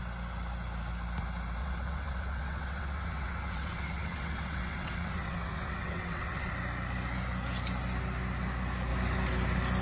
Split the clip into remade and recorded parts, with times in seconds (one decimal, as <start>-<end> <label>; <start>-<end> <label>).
0.0-1.6 recorded; 1.6-6.5 remade; 6.5-9.8 recorded